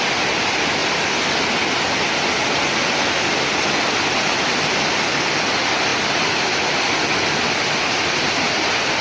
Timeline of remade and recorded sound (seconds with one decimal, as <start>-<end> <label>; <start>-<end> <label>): 0.0-9.0 recorded